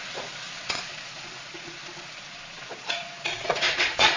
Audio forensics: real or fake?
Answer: fake